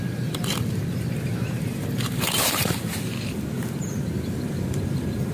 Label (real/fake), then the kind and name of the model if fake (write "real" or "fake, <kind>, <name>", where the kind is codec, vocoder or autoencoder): fake, vocoder, BigVGAN v2